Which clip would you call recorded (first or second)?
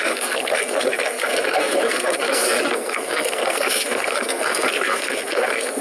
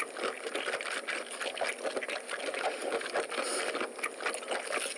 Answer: second